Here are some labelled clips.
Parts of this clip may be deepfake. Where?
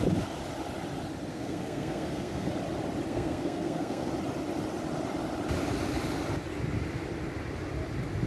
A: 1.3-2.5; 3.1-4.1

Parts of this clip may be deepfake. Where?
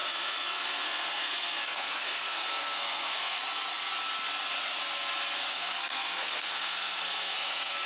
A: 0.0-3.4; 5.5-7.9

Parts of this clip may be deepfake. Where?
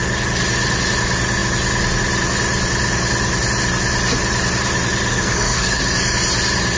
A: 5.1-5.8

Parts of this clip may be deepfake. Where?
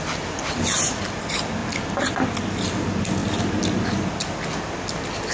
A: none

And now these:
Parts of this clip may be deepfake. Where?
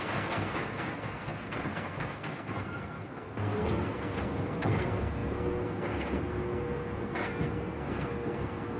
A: 0.0-8.8